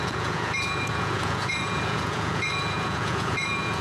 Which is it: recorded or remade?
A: remade